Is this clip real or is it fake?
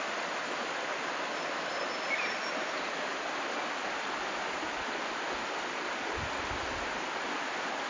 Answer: real